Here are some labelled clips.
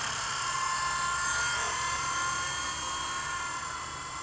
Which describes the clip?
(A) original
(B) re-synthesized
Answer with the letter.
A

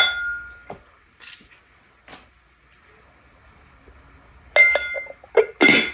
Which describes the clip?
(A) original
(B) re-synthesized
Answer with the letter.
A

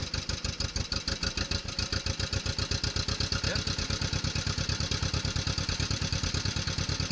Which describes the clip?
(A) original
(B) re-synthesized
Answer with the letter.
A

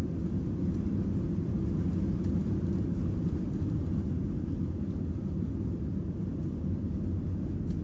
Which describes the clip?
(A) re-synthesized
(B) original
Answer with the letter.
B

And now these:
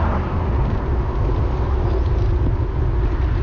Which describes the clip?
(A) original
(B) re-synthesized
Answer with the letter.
A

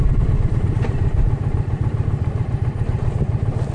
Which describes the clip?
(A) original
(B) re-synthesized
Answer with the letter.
B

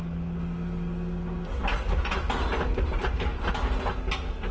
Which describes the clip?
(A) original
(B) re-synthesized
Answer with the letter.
A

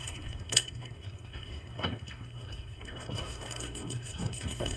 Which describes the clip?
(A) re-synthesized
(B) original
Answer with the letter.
A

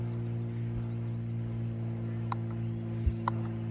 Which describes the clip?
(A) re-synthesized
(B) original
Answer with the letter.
B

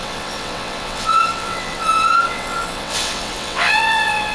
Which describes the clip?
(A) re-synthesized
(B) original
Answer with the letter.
A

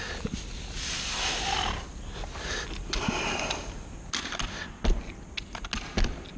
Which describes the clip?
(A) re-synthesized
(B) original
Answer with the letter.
B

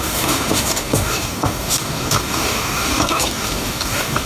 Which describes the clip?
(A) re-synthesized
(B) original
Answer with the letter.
A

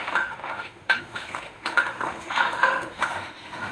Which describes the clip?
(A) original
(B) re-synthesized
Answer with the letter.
B